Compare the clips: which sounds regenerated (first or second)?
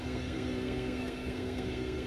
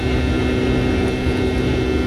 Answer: first